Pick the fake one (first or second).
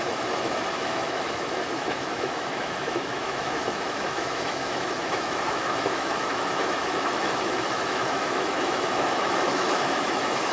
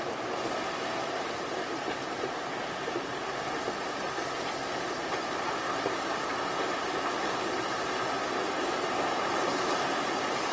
first